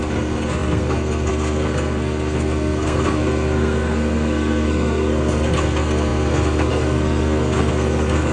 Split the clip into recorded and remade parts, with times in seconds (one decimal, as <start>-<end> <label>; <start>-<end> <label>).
0.0-8.3 remade